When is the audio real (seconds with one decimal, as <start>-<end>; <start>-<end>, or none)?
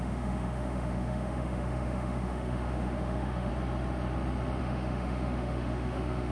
3.5-4.6